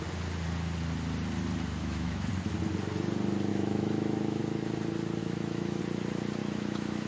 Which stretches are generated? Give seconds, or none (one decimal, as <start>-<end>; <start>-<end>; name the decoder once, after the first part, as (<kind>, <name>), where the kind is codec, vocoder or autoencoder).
1.8-2.3 (autoencoder, DAC-VAE); 3.5-4.4; 5.2-5.8; 6.4-7.1